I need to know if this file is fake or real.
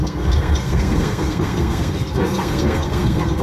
fake